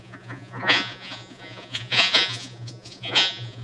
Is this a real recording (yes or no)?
no